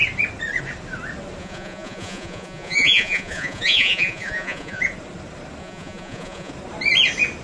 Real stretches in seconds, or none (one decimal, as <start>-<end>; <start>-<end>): 0.0-1.4; 4.8-5.6; 6.5-7.4